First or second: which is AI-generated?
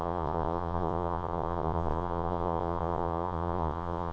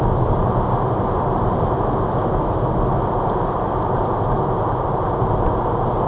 first